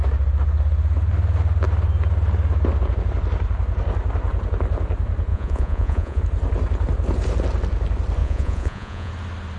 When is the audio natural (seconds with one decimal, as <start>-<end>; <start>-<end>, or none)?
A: 0.0-5.3; 6.2-8.2; 9.1-9.6